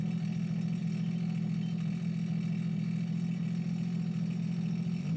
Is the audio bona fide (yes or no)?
yes